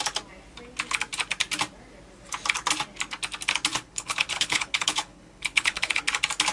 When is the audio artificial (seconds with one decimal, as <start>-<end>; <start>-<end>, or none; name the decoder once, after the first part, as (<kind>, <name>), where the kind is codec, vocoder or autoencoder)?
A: 3.7-6.0 (codec, HILCodec)